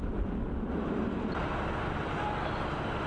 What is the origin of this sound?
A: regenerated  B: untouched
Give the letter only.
B